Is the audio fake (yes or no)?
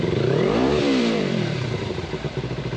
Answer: yes